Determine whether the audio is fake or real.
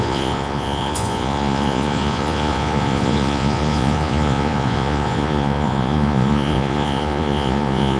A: fake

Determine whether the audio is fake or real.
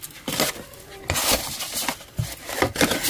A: real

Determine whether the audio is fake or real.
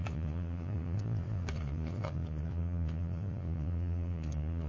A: fake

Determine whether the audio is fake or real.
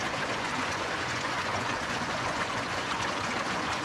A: fake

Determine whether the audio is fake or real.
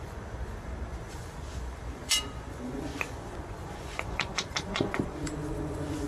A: fake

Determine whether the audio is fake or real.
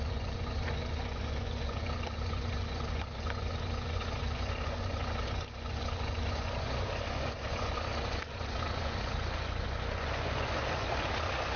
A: fake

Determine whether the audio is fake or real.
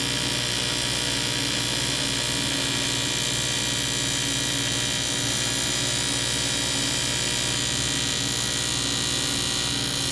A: real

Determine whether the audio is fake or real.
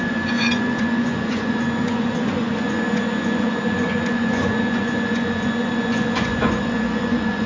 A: fake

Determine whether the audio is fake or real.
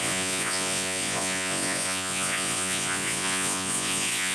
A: fake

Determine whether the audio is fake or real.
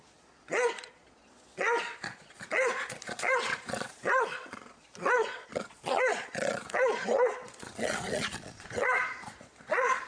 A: fake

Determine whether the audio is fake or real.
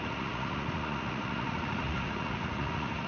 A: fake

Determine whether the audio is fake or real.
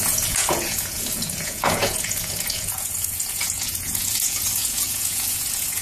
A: fake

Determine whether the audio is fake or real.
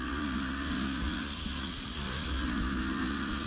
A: fake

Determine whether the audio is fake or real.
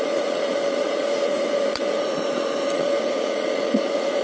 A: fake